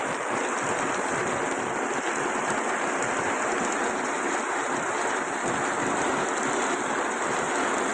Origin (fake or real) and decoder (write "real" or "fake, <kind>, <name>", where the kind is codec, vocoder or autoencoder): real